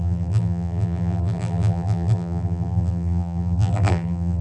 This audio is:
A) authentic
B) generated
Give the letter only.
B